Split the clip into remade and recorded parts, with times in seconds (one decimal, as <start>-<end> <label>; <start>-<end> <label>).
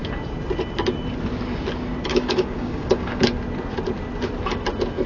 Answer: 0.0-2.1 recorded; 2.1-3.2 remade; 3.2-5.1 recorded